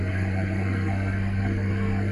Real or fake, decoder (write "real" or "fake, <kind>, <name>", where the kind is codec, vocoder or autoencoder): fake, codec, SNAC